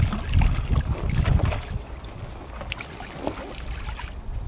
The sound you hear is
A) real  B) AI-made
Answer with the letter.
A